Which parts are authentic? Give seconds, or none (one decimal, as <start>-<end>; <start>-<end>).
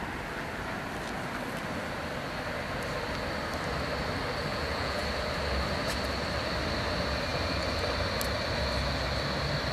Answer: 0.0-4.5; 5.0-9.7